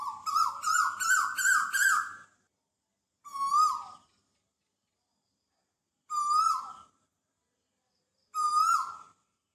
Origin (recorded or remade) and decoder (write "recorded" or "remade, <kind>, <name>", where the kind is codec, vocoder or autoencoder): recorded